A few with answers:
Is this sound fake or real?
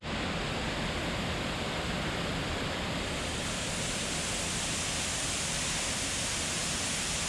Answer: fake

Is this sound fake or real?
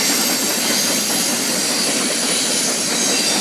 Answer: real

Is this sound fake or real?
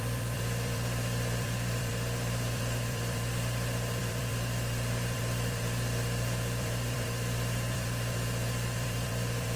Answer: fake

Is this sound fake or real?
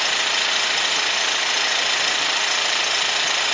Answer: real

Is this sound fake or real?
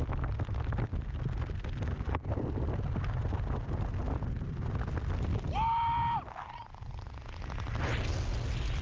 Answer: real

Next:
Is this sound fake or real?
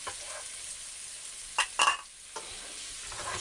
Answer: real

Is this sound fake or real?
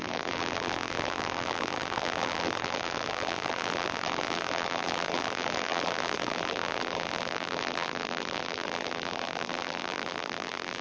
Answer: fake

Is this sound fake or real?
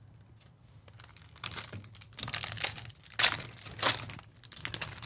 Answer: real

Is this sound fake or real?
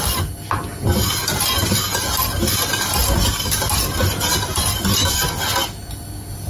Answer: real